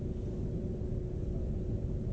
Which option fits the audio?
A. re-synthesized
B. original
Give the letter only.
B